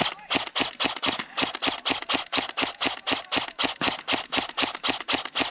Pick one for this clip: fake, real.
real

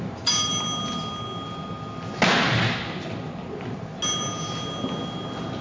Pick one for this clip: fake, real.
real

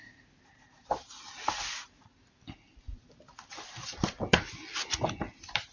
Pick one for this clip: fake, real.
real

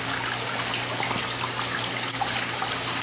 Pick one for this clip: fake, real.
real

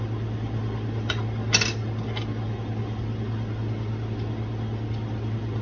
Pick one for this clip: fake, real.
real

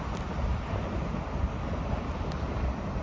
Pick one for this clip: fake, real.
real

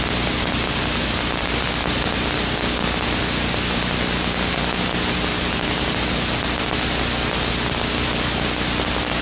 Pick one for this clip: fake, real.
real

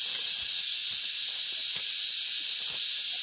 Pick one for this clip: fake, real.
real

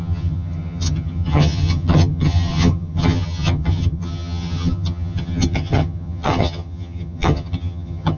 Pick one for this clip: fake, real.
fake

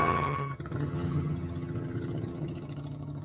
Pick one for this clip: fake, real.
fake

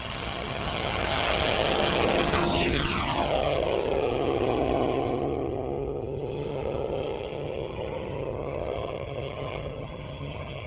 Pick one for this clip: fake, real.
fake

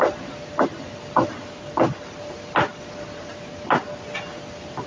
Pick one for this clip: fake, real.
real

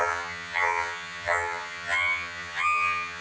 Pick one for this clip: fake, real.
fake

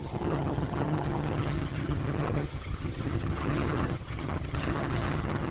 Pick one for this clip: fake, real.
fake